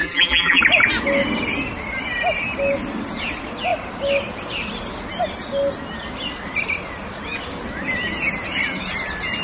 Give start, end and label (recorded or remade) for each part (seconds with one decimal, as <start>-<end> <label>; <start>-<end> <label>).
0.0-0.6 remade; 0.6-9.4 recorded